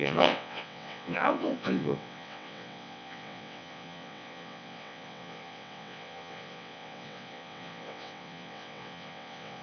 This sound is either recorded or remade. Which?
remade